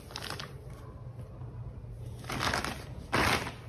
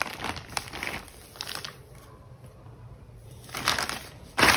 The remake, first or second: second